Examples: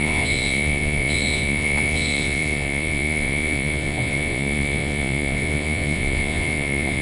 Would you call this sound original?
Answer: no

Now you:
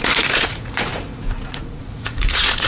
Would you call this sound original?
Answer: no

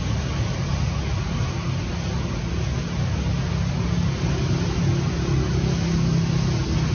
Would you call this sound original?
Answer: yes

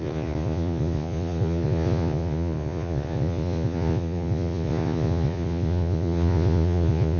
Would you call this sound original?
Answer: no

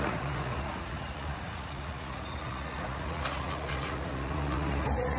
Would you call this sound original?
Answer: no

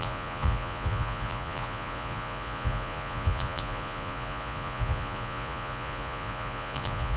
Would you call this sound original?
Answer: no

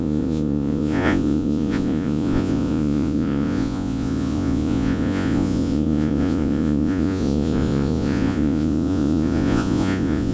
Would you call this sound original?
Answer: no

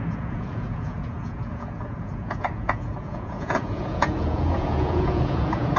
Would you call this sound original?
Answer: no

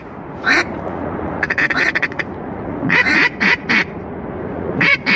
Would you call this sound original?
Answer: no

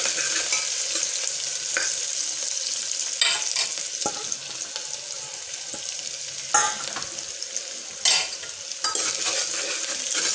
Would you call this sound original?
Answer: yes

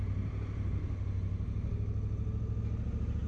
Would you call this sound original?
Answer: yes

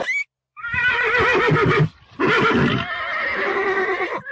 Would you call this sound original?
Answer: yes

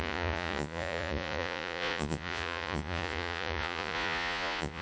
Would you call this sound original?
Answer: no